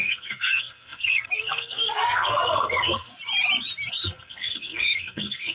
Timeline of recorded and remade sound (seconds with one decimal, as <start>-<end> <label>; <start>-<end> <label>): 0.0-3.1 remade; 3.1-3.9 recorded; 3.9-5.5 remade